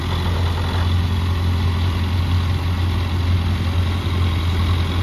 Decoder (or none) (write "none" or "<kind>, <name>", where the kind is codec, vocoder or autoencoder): none